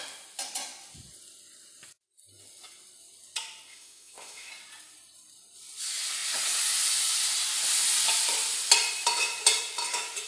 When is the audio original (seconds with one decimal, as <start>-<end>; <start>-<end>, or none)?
0.0-3.7; 4.5-10.3